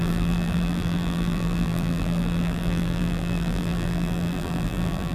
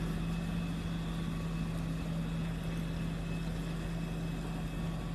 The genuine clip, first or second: second